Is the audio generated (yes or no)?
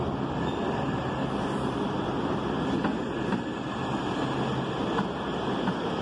no